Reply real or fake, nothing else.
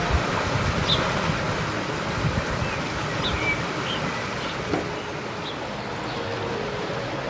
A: real